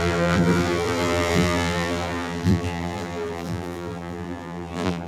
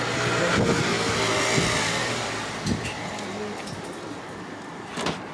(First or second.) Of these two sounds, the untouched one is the second